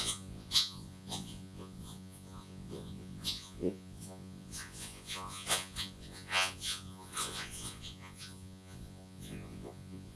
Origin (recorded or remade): remade